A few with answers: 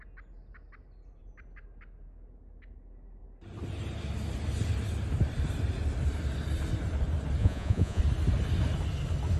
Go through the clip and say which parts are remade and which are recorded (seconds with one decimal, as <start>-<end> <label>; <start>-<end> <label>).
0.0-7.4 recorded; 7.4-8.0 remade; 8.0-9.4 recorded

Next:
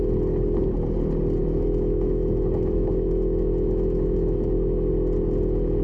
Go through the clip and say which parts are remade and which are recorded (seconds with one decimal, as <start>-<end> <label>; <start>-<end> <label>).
0.0-1.4 recorded; 1.4-4.9 remade; 4.9-5.8 recorded

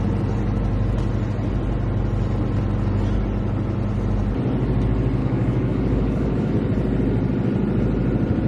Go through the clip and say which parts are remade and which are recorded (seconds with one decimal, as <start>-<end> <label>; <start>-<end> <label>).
0.0-5.2 recorded; 5.2-6.5 remade; 6.5-8.5 recorded

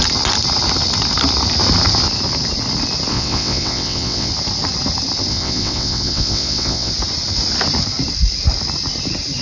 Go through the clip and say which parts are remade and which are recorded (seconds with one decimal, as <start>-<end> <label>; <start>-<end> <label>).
0.0-3.1 recorded; 3.1-4.3 remade; 4.3-5.3 recorded; 5.3-6.9 remade; 6.9-9.4 recorded

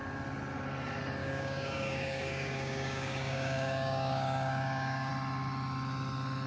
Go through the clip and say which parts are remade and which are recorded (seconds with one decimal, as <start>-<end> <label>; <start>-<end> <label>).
0.0-1.2 recorded; 1.2-5.1 remade; 5.1-6.5 recorded

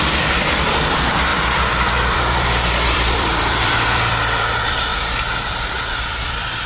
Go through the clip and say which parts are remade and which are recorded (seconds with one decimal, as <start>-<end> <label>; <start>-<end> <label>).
0.0-4.9 remade; 4.9-5.7 recorded; 5.7-6.7 remade